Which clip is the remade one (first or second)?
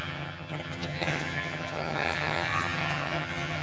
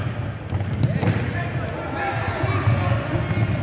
first